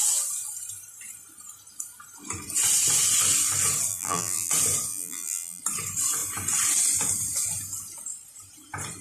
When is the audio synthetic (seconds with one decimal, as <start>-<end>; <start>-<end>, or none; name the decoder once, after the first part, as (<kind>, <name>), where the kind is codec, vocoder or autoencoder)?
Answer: 3.9-4.5 (vocoder, BigVGAN v2); 4.9-5.6